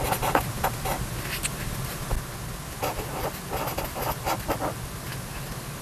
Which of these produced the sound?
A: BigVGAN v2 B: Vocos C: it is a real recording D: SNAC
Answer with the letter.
C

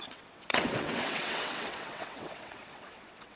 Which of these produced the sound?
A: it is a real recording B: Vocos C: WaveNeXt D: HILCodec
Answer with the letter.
C